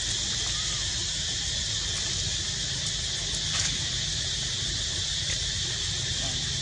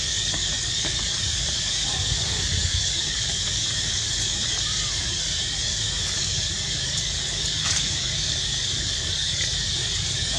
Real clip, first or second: first